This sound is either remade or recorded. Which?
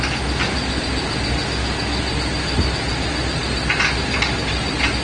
recorded